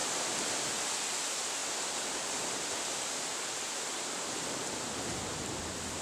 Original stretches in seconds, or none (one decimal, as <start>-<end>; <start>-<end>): 0.7-1.6; 5.2-6.0